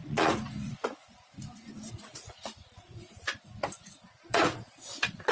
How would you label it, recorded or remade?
remade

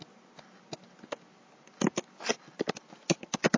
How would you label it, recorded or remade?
recorded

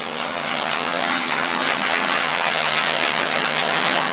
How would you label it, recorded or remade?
remade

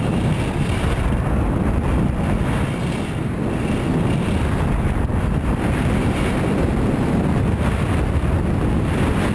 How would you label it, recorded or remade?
recorded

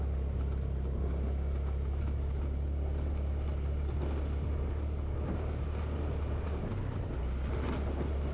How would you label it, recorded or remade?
recorded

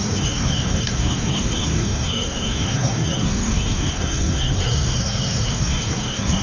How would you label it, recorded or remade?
remade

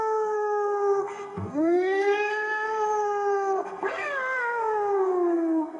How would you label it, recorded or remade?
remade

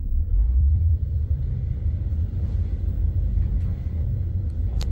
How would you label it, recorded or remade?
remade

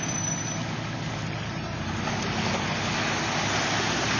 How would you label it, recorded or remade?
recorded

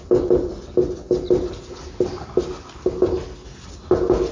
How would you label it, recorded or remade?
recorded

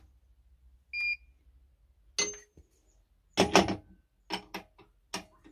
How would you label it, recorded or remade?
recorded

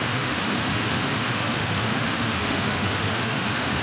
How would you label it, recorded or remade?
remade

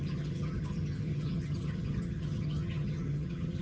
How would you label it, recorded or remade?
remade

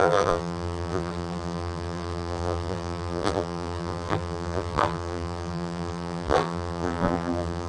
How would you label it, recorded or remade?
remade